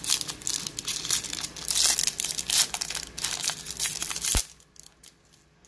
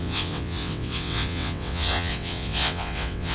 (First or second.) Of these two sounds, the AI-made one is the second